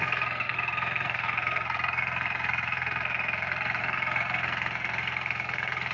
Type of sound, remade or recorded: remade